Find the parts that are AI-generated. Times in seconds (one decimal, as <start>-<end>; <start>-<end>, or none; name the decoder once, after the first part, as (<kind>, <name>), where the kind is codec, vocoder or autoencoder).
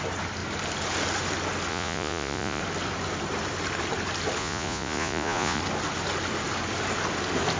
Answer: 1.7-2.6 (vocoder, Vocos); 4.4-5.6